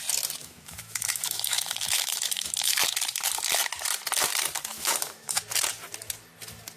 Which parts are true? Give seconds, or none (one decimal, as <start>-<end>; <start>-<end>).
0.0-0.4; 2.7-4.7; 5.4-6.8